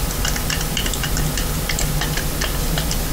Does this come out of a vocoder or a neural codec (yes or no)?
no